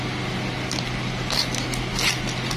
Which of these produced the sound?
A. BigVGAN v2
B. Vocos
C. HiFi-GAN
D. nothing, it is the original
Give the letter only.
D